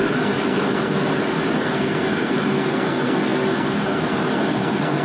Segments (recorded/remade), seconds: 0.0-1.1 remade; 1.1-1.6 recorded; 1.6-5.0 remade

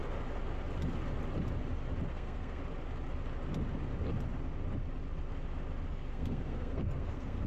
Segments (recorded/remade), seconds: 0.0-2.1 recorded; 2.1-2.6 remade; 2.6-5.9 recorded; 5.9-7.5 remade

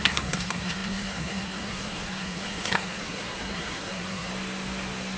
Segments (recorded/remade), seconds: 0.0-4.3 remade; 4.3-5.2 recorded

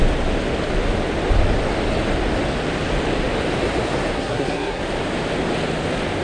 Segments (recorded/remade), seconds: 0.0-4.1 recorded; 4.1-4.8 remade; 4.8-6.2 recorded